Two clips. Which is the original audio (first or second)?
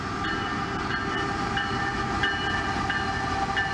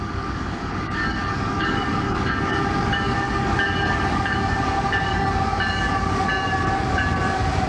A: first